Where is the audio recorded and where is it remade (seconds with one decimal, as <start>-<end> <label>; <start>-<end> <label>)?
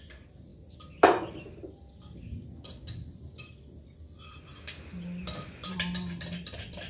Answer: 0.0-6.9 recorded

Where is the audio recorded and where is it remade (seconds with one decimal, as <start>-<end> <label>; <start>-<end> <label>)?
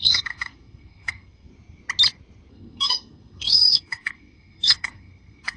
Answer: 0.0-1.5 remade; 1.5-2.5 recorded; 2.5-5.6 remade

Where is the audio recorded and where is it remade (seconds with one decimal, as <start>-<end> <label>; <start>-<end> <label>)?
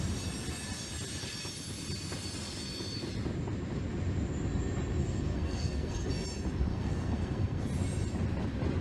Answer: 0.0-5.0 recorded; 5.0-6.1 remade; 6.1-6.7 recorded; 6.7-7.7 remade; 7.7-8.8 recorded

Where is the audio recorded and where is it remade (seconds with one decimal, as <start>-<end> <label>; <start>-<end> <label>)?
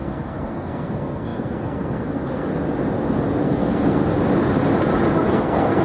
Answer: 0.0-2.5 remade; 2.5-3.4 recorded; 3.4-4.0 remade; 4.0-5.3 recorded; 5.3-5.8 remade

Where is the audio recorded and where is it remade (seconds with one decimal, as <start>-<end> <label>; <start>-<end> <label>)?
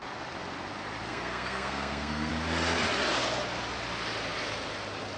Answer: 0.0-1.1 recorded; 1.1-2.3 remade; 2.3-5.2 recorded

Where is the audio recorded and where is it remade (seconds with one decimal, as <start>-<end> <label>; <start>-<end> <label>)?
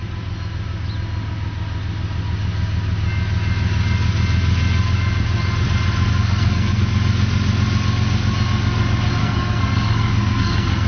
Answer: 0.0-6.1 recorded; 6.1-6.8 remade; 6.8-9.2 recorded; 9.2-10.9 remade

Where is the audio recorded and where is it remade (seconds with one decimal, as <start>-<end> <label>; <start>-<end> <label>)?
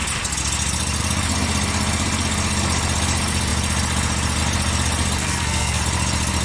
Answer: 0.0-5.2 recorded; 5.2-5.8 remade; 5.8-6.4 recorded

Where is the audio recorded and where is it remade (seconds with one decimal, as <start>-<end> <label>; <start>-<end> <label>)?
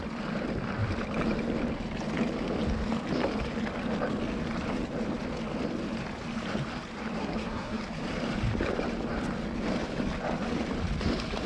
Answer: 0.0-7.2 recorded; 7.2-7.8 remade; 7.8-11.5 recorded